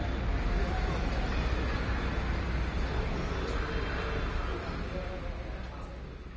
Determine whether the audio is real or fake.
real